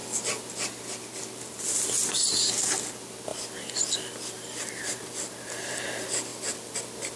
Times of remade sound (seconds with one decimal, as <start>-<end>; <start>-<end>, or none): 3.3-4.9; 6.3-6.8